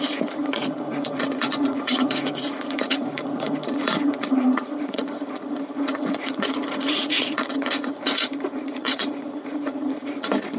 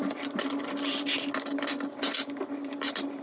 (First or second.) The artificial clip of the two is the first